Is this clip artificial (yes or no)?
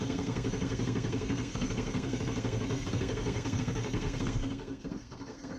yes